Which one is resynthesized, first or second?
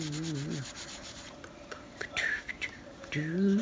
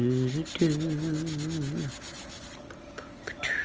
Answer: first